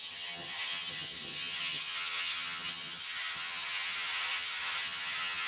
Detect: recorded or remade remade